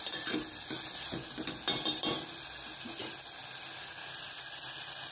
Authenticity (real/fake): real